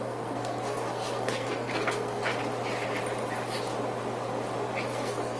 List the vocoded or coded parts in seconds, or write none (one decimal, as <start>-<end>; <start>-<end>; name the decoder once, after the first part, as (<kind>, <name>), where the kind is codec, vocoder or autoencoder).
0.0-2.2 (codec, SNAC); 4.9-5.4